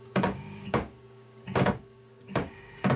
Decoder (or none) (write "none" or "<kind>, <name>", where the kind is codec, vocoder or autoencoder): codec, DAC